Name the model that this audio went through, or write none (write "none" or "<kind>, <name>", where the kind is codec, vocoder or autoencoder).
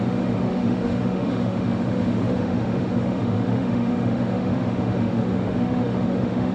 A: autoencoder, DAC-VAE